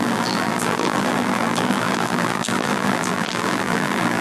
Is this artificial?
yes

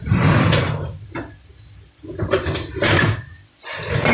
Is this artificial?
yes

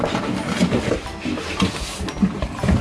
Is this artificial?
no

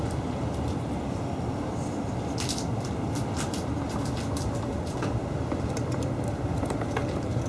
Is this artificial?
yes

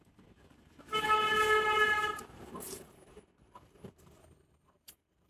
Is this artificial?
yes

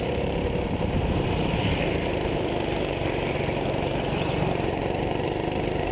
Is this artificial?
yes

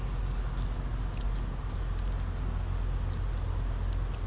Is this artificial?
no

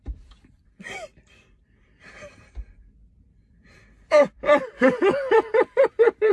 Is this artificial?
yes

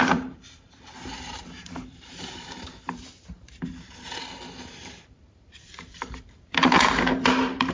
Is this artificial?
yes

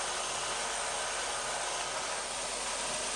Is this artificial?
no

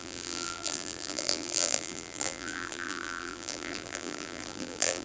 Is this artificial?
yes